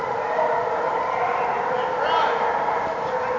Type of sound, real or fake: real